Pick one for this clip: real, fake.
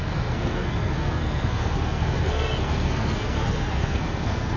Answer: fake